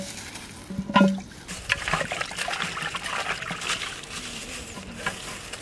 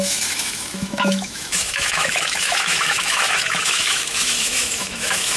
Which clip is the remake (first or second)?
second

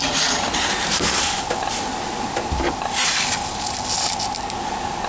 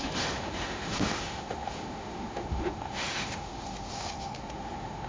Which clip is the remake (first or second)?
second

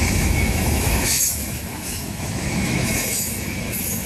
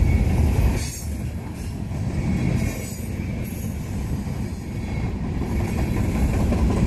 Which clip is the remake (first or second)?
first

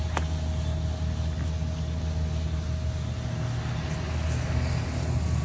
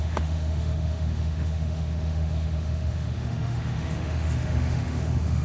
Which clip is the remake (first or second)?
second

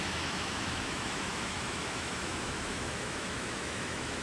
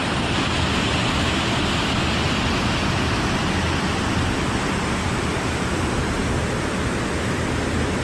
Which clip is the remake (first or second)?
first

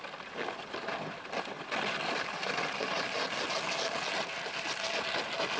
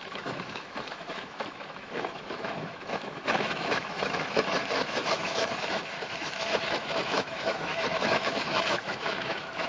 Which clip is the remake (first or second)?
second